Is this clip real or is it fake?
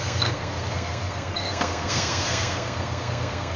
fake